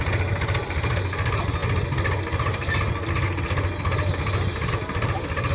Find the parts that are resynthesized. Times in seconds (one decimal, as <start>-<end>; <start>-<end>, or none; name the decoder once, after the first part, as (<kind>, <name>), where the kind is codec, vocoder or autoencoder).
none